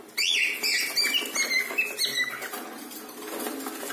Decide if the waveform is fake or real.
real